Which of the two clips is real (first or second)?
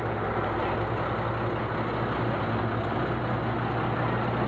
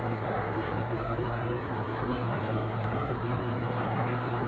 first